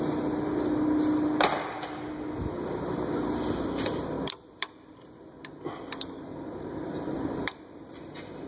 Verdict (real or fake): fake